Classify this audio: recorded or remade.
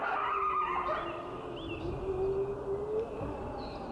recorded